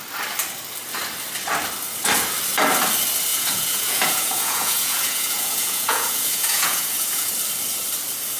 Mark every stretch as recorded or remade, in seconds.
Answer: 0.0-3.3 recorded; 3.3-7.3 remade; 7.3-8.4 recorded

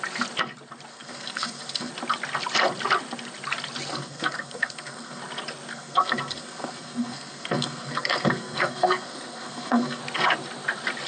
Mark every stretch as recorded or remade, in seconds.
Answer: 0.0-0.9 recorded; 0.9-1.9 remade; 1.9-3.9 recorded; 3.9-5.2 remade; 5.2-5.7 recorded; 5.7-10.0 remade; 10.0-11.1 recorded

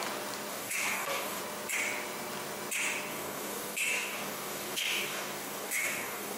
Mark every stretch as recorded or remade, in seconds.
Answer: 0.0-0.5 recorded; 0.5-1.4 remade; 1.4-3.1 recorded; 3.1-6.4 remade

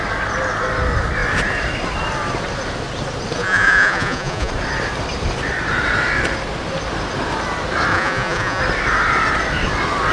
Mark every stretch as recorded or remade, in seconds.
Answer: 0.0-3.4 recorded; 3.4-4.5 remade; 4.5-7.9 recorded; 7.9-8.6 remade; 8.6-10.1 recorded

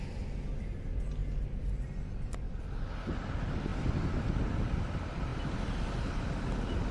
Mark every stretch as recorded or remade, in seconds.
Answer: 0.0-6.9 recorded

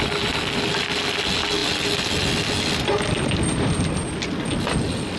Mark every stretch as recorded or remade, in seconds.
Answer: 0.0-5.2 recorded

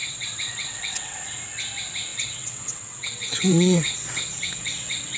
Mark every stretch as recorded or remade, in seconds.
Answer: 0.0-1.2 remade; 1.2-2.1 recorded; 2.1-5.2 remade

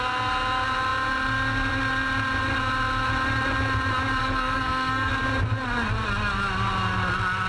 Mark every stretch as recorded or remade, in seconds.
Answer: 0.0-4.2 recorded; 4.2-5.1 remade; 5.1-7.5 recorded